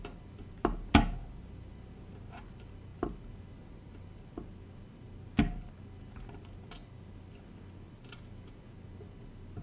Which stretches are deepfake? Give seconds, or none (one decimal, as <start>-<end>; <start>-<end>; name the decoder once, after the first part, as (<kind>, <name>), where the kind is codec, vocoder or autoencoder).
none